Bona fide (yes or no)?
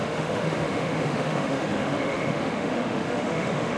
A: no